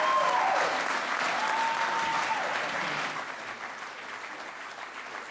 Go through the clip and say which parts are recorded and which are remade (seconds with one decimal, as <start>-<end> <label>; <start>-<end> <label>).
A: 0.0-5.3 recorded